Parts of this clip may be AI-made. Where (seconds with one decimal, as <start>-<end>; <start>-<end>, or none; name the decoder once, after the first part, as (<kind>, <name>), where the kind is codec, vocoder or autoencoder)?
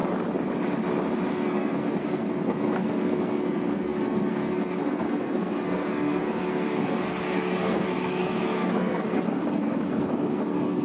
1.3-10.8 (codec, SNAC)